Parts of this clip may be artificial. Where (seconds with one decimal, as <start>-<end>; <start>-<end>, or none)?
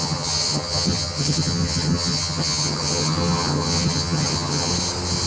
0.0-4.7